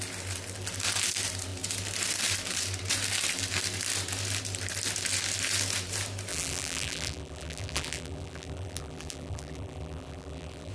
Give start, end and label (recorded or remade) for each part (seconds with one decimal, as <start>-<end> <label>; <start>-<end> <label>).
0.0-6.3 recorded; 6.3-10.7 remade

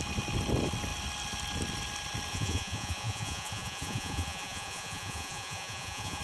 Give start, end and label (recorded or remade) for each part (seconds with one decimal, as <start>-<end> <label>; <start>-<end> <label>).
0.0-2.3 recorded; 2.3-6.2 remade

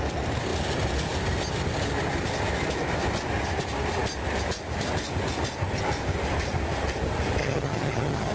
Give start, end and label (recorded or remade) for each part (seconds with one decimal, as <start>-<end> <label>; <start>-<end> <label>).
0.0-7.4 recorded; 7.4-8.3 remade

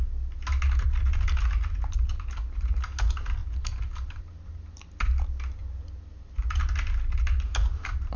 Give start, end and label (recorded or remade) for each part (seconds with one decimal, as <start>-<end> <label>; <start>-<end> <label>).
0.0-3.4 recorded; 3.4-4.2 remade; 4.2-8.2 recorded

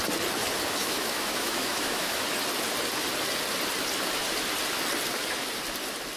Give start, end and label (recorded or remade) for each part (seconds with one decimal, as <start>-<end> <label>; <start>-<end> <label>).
0.0-0.8 recorded; 0.8-2.2 remade; 2.2-6.2 recorded

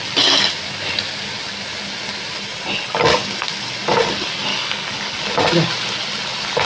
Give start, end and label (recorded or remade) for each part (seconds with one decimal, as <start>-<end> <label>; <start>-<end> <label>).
0.0-4.5 recorded; 4.5-5.2 remade; 5.2-6.7 recorded

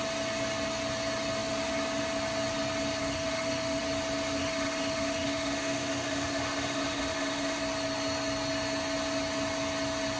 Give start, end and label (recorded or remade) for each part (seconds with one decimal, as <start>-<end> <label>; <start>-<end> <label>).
0.0-3.0 recorded; 3.0-3.8 remade; 3.8-4.4 recorded; 4.4-7.6 remade; 7.6-10.2 recorded